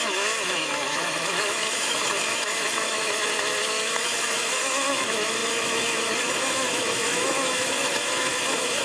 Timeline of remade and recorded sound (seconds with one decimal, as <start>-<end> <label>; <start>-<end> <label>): 0.0-8.8 remade